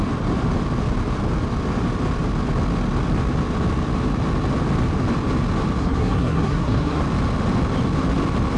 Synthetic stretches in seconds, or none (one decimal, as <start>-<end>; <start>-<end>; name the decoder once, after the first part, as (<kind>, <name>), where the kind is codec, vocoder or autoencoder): 5.8-7.0 (codec, SNAC)